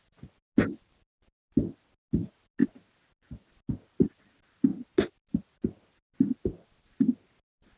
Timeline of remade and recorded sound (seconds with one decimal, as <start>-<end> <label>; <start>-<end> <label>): 0.0-7.8 recorded